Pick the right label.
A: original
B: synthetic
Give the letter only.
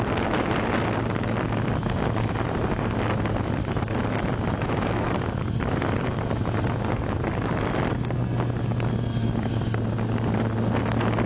A